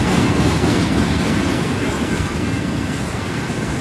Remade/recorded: remade